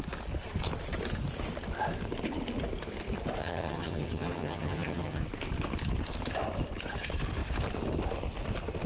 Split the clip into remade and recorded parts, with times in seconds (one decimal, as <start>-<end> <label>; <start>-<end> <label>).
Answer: 0.0-3.4 recorded; 3.4-5.2 remade; 5.2-8.9 recorded